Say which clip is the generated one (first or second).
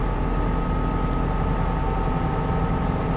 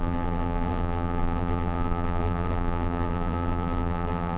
second